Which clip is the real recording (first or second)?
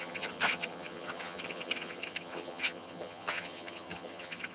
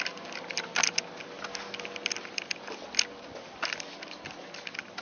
second